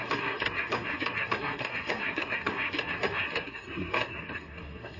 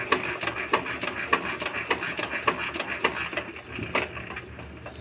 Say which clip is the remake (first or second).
first